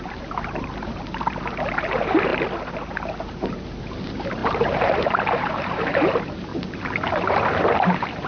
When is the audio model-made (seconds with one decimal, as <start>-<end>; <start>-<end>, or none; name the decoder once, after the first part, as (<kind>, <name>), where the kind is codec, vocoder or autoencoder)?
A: 0.0-2.3 (vocoder, BigVGAN v2); 3.2-6.5; 7.6-8.3